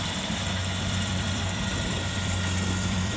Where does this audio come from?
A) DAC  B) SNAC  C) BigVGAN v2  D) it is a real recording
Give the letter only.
C